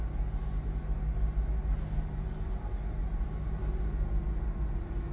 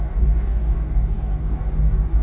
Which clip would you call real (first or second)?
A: first